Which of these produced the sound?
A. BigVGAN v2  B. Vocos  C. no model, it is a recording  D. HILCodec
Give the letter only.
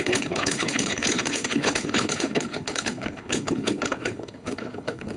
D